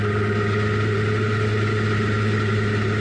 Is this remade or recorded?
recorded